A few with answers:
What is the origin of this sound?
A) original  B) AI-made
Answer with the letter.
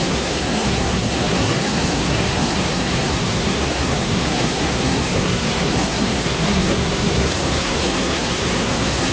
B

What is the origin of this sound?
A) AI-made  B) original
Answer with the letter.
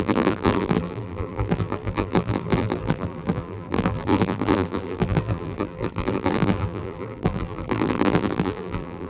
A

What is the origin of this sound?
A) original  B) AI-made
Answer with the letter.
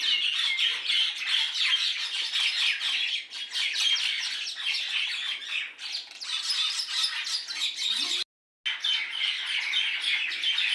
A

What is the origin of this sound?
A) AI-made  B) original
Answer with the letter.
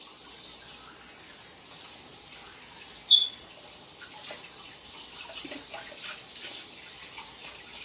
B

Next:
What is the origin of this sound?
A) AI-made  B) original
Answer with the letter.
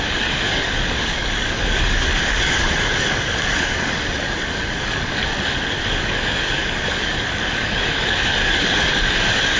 A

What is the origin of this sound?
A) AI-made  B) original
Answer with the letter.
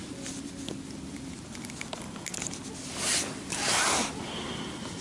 B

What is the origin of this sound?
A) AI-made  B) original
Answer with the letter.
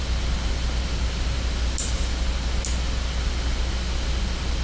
B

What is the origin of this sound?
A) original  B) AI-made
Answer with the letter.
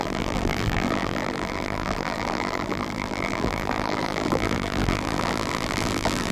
B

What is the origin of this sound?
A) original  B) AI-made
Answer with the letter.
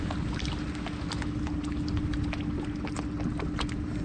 A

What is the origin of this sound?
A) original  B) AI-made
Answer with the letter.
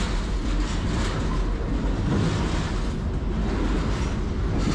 A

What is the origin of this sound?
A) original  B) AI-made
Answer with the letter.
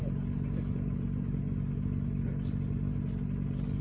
A